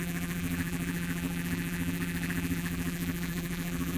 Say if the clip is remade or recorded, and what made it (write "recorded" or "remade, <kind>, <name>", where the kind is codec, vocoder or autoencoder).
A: remade, vocoder, BigVGAN v2